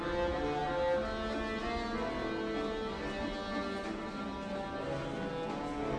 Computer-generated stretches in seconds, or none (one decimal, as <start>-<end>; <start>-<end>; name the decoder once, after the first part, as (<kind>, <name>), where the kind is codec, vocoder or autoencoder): none